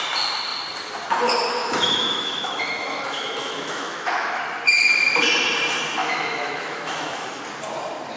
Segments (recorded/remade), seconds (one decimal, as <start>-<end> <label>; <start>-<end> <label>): 0.0-1.6 recorded; 1.6-4.4 remade; 4.4-6.0 recorded; 6.0-7.4 remade; 7.4-8.2 recorded